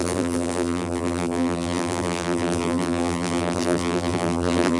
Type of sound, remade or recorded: remade